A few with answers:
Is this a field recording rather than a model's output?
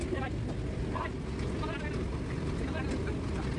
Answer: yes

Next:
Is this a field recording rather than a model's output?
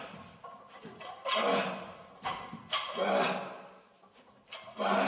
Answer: yes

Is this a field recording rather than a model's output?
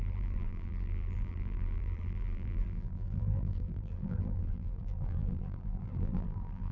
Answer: no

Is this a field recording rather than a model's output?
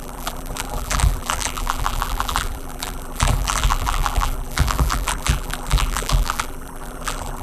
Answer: no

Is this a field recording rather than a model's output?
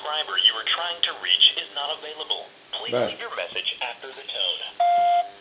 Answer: yes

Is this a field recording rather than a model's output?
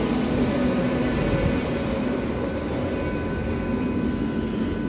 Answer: yes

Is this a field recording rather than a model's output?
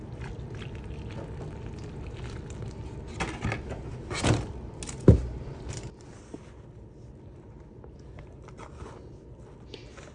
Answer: yes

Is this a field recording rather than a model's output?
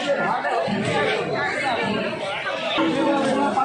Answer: yes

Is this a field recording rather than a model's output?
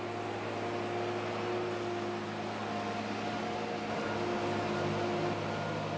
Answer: yes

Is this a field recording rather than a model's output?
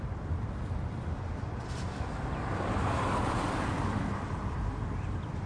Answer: no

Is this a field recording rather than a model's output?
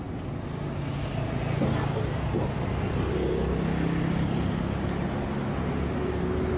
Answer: yes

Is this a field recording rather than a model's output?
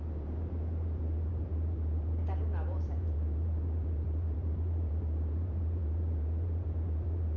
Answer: no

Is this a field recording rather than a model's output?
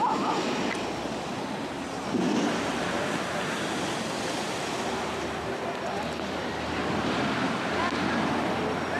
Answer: no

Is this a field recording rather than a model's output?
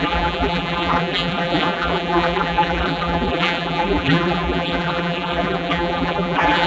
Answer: no